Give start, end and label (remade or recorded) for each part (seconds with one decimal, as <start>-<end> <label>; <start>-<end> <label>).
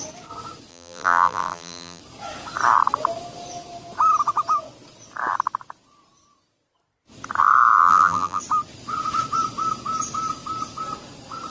0.0-0.7 recorded; 0.7-2.0 remade; 2.0-7.8 recorded; 7.8-8.4 remade; 8.4-11.5 recorded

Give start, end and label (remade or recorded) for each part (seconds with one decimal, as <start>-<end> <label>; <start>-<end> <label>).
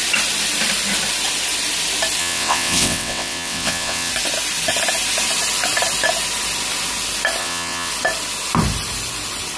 0.0-2.2 recorded; 2.2-4.1 remade; 4.1-7.4 recorded; 7.4-7.9 remade; 7.9-9.6 recorded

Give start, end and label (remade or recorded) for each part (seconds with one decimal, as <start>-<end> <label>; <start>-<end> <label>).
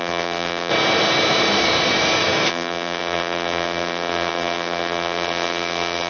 0.0-0.7 remade; 0.7-2.5 recorded; 2.5-6.1 remade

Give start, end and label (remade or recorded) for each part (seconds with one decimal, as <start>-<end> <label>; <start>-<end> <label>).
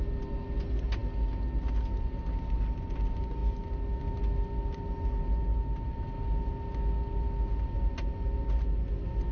0.0-9.3 recorded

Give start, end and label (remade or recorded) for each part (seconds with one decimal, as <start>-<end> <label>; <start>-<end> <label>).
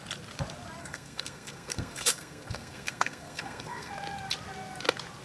0.0-0.8 recorded; 0.8-3.9 remade; 3.9-5.2 recorded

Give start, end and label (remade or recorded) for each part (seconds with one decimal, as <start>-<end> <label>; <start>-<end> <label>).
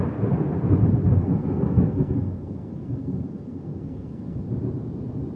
0.0-1.2 recorded; 1.2-4.4 remade; 4.4-5.4 recorded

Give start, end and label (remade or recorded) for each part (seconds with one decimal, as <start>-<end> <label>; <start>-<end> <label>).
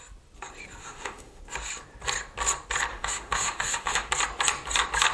0.0-0.8 recorded; 0.8-1.4 remade; 1.4-2.9 recorded; 2.9-4.1 remade; 4.1-5.1 recorded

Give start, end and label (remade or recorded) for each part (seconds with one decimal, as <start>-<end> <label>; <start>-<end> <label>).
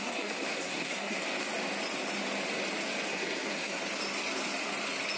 0.0-1.2 remade; 1.2-3.1 recorded; 3.1-3.8 remade; 3.8-5.2 recorded